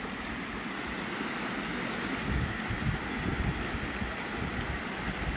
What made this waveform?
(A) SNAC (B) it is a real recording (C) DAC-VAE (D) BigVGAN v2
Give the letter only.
B